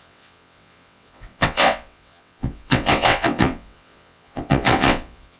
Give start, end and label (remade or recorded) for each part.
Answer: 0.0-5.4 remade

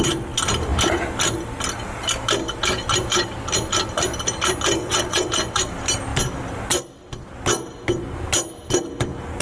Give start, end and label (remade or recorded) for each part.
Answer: 0.0-4.8 recorded; 4.8-5.3 remade; 5.3-9.4 recorded

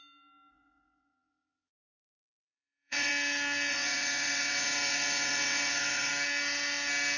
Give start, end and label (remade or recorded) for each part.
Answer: 0.0-0.5 recorded; 0.5-3.1 remade; 3.1-3.7 recorded; 3.7-6.1 remade; 6.1-7.2 recorded